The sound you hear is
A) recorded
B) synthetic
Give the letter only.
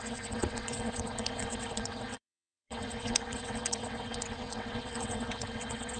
B